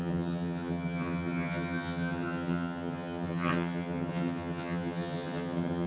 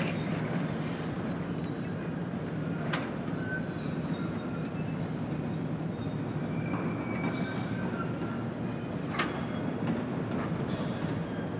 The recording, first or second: second